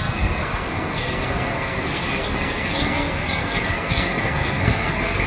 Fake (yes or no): yes